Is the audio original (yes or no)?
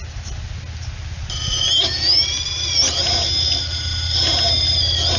yes